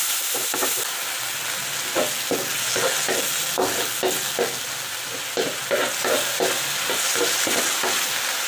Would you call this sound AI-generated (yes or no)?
no